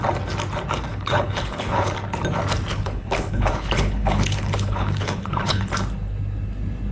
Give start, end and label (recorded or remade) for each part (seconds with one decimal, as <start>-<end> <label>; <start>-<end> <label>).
0.0-0.9 recorded; 0.9-1.9 remade; 1.9-2.7 recorded; 2.7-5.7 remade; 5.7-6.9 recorded